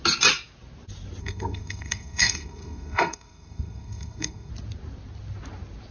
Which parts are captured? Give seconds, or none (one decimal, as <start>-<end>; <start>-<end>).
0.0-1.2; 4.5-5.9